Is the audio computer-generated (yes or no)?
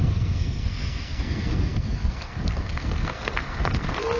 yes